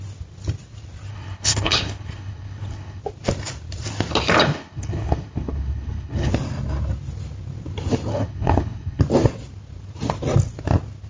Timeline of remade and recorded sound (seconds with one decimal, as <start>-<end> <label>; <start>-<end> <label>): 0.0-1.1 recorded; 1.1-3.0 remade; 3.0-4.4 recorded; 4.4-6.3 remade; 6.3-8.1 recorded; 8.1-9.0 remade; 9.0-11.1 recorded